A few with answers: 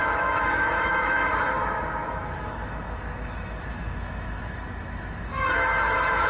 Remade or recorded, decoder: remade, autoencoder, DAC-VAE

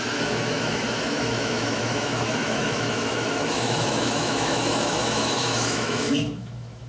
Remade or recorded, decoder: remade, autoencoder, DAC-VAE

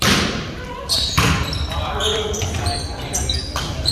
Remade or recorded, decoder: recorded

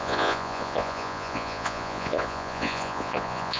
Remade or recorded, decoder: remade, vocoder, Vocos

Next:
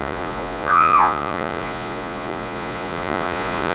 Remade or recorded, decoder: remade, vocoder, Vocos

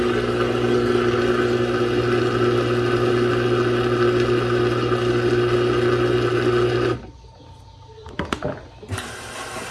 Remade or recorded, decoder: recorded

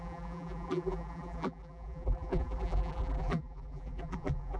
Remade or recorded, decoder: remade, vocoder, BigVGAN v2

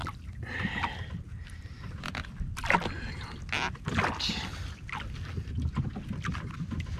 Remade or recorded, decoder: recorded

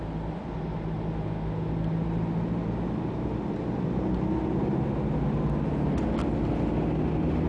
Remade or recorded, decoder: recorded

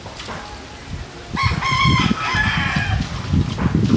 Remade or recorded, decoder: recorded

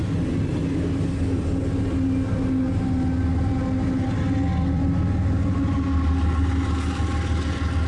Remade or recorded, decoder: recorded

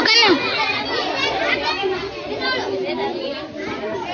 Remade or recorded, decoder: recorded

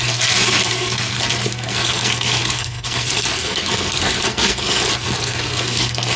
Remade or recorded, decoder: remade, codec, SNAC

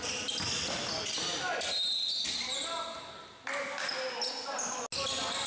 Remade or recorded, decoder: recorded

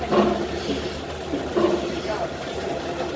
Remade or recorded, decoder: remade, vocoder, BigVGAN v2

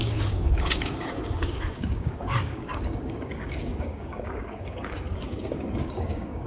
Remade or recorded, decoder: remade, codec, DAC